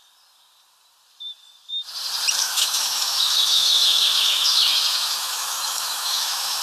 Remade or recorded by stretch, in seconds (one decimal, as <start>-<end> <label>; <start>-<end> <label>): 0.0-2.4 recorded; 2.4-6.6 remade